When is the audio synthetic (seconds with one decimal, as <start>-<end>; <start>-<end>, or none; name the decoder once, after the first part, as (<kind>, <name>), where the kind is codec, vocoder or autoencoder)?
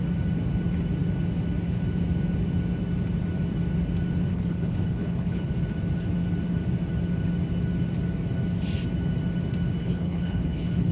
4.3-5.5 (codec, HILCodec); 9.8-10.9